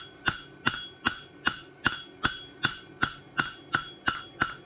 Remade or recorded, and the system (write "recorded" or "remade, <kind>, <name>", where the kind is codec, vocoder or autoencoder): recorded